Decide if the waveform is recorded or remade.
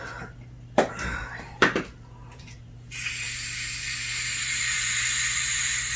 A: remade